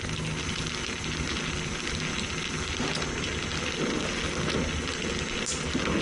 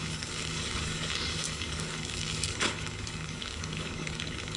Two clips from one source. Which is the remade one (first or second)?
second